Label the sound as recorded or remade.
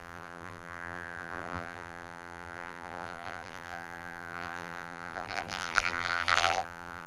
remade